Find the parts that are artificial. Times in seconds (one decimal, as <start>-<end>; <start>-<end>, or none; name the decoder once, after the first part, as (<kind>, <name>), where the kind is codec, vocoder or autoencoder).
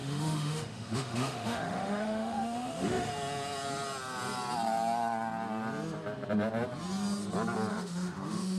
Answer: 0.0-3.1 (autoencoder, DAC-VAE); 7.7-8.6